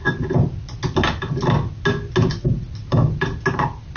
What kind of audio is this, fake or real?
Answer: real